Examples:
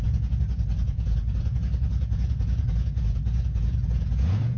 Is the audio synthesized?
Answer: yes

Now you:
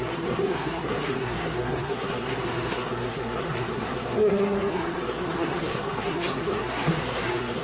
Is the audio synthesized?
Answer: yes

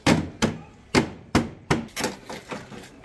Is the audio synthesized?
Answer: no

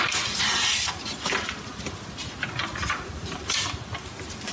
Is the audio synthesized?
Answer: yes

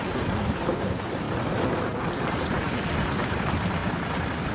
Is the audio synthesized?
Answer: no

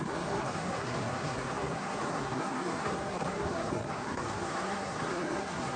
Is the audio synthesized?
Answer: yes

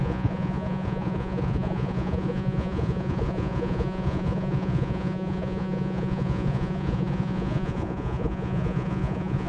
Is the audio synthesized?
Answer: yes